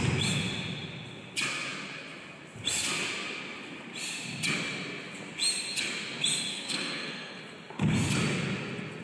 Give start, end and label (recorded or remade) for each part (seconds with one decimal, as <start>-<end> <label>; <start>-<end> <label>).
0.0-6.5 recorded; 6.5-7.4 remade; 7.4-9.0 recorded